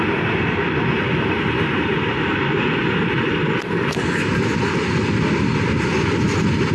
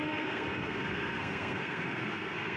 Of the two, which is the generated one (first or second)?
second